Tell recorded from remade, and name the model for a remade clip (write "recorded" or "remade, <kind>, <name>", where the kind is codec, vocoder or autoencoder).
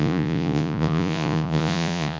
remade, vocoder, Vocos